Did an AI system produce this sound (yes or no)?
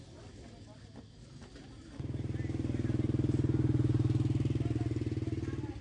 no